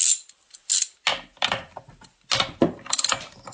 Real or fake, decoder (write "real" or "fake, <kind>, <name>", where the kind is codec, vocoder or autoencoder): real